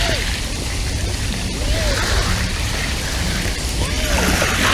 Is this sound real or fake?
fake